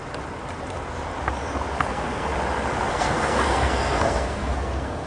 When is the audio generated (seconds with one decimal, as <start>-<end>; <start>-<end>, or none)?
1.9-2.3; 2.9-5.1